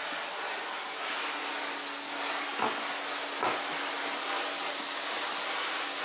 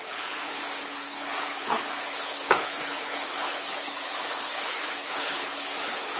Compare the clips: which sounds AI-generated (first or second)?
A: second